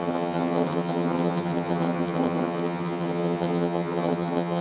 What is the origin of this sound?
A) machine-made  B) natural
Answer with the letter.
A